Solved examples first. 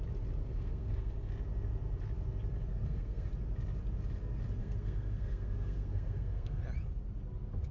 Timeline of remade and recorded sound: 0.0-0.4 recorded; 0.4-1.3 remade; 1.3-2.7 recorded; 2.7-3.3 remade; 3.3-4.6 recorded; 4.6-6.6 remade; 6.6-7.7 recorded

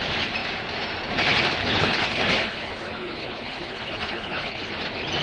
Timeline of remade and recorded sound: 0.0-1.6 recorded; 1.6-4.7 remade; 4.7-5.2 recorded

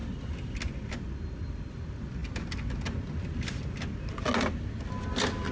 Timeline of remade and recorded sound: 0.0-5.5 recorded